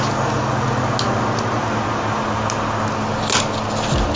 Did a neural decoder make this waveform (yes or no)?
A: no